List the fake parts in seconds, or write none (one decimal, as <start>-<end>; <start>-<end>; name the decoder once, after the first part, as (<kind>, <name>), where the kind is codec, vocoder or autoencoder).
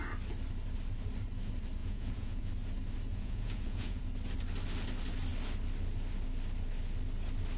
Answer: 1.8-2.5 (vocoder, Vocos); 3.1-4.0